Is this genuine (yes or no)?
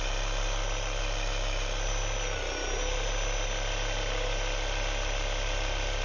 yes